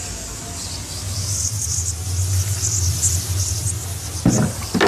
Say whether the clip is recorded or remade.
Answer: recorded